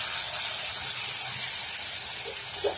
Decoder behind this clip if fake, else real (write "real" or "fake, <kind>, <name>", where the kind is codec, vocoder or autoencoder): real